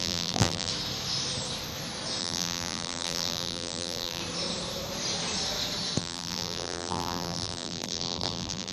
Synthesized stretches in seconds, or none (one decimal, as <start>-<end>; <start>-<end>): 0.0-0.7; 2.2-4.2; 6.0-8.7